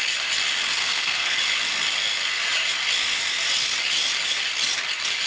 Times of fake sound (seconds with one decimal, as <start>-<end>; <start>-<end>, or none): 0.8-1.4